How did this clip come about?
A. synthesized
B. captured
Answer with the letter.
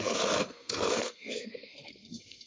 A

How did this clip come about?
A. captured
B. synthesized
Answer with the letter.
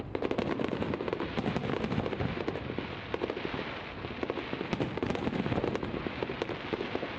A